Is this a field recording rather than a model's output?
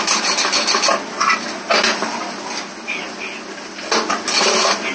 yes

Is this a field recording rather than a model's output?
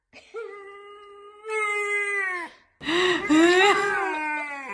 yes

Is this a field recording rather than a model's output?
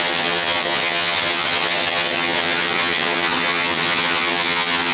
no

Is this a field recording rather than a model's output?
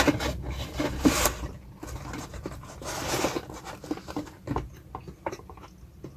yes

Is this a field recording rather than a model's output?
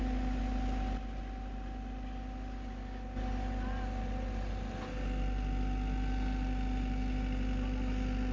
yes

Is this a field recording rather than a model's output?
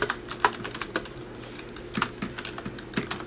yes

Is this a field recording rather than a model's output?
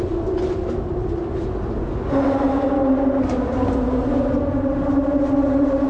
yes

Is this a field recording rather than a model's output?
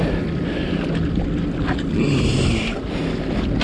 yes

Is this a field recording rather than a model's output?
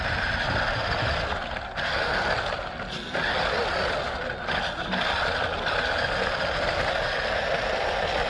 yes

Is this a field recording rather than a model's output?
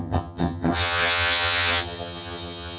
no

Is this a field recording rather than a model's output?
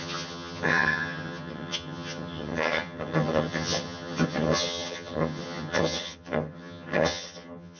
no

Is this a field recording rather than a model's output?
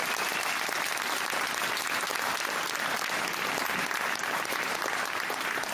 yes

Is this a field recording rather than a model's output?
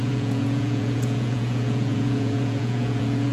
no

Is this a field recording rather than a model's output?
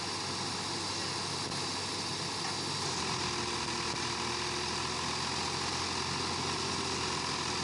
yes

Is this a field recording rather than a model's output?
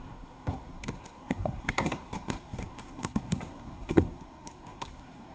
no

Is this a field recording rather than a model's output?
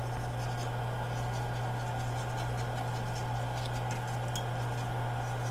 yes